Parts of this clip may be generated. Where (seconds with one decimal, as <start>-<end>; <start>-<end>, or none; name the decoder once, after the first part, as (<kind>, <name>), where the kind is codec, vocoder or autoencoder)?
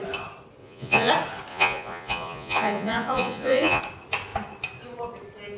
0.6-1.1 (vocoder, Vocos); 1.5-3.8